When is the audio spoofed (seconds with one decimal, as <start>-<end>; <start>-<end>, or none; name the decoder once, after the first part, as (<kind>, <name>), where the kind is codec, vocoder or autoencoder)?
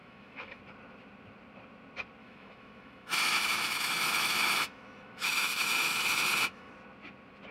0.0-0.6 (autoencoder, DAC-VAE); 2.2-6.7